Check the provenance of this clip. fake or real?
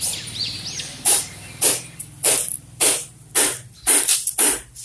real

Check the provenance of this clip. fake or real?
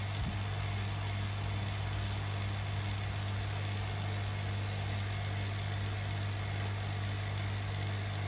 real